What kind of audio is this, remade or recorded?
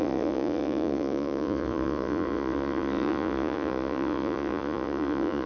remade